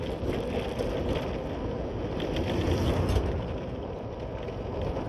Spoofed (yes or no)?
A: no